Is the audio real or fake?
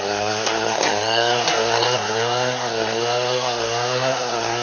fake